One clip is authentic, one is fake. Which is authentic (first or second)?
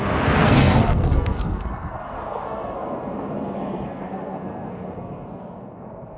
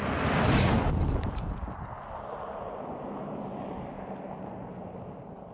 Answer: second